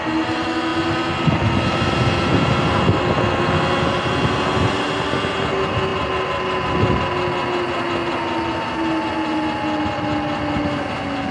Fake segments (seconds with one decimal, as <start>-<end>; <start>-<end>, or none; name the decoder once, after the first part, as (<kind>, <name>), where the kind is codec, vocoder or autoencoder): none